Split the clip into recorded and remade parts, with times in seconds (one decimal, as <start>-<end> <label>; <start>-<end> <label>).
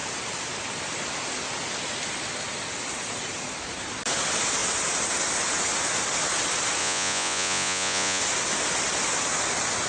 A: 0.0-6.8 recorded; 6.8-8.2 remade; 8.2-9.9 recorded